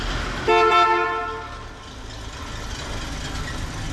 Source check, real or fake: real